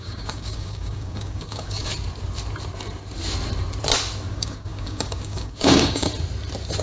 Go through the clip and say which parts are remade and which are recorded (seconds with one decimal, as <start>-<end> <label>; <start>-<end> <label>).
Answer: 0.0-1.9 remade; 1.9-4.3 recorded; 4.3-6.1 remade; 6.1-6.8 recorded